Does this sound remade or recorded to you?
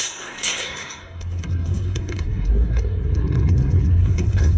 remade